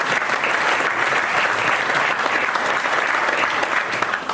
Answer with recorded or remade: recorded